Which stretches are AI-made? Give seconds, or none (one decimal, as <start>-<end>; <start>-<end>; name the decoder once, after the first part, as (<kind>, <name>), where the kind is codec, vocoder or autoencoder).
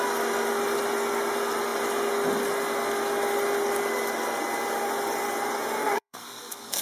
5.8-6.8 (codec, SNAC)